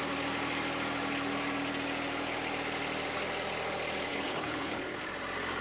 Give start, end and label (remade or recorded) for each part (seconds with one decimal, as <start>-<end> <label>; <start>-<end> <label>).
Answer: 0.0-4.1 recorded; 4.1-5.0 remade; 5.0-5.6 recorded